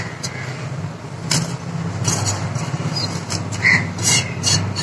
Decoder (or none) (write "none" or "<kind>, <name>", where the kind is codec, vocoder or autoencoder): none